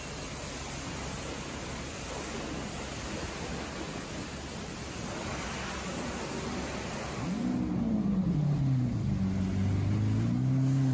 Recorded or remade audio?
recorded